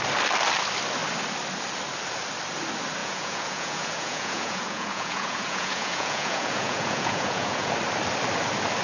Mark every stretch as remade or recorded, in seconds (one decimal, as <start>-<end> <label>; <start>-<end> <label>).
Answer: 0.0-3.0 recorded; 3.0-7.7 remade; 7.7-8.8 recorded

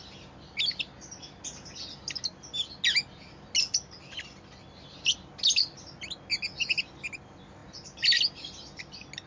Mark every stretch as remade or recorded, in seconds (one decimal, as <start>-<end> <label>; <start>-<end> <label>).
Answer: 0.0-9.3 recorded

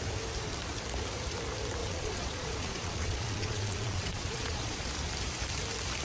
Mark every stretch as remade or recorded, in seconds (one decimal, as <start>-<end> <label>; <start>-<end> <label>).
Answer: 0.0-1.8 recorded; 1.8-4.9 remade; 4.9-6.0 recorded

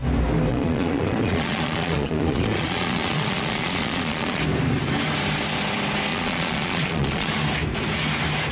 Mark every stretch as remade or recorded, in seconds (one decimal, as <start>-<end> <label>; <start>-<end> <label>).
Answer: 0.0-0.5 recorded; 0.5-4.4 remade; 4.4-6.1 recorded; 6.1-7.3 remade; 7.3-8.5 recorded

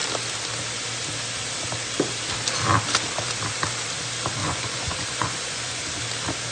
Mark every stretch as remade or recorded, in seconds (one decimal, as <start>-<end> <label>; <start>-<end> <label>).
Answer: 0.0-4.4 recorded; 4.4-5.8 remade; 5.8-6.5 recorded

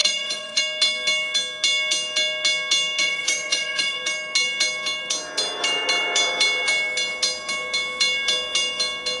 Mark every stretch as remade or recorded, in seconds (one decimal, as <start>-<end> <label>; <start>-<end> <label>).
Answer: 0.0-0.6 remade; 0.6-3.0 recorded; 3.0-4.0 remade; 4.0-9.2 recorded